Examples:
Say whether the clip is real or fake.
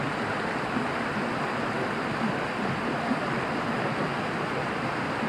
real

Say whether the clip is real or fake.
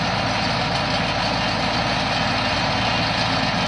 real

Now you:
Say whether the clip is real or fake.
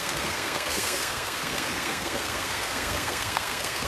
fake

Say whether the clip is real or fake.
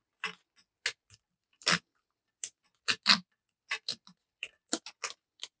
real